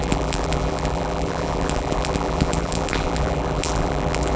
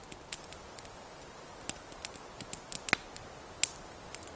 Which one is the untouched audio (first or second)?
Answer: second